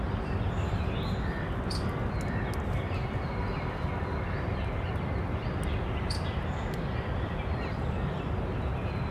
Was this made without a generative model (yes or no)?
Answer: yes